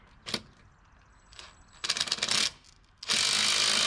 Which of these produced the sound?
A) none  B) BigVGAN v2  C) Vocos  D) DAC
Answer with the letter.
A